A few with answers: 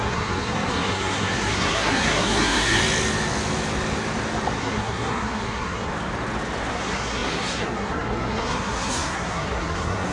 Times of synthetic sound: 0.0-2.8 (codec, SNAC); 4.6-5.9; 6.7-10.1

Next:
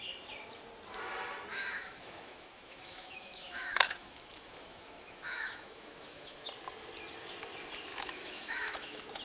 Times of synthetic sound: 1.5-6.5 (autoencoder, DAC-VAE); 7.9-9.2

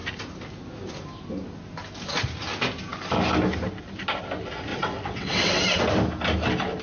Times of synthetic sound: 4.7-5.8 (vocoder, WaveNeXt)

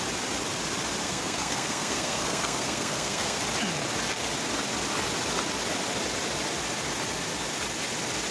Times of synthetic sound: 1.0-3.4 (codec, SNAC)

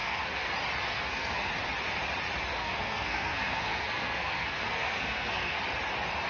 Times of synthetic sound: 0.0-0.5 (codec, SNAC); 0.9-1.5; 2.6-5.6

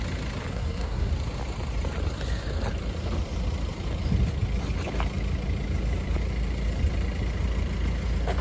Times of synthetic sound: 0.5-1.1 (codec, SNAC)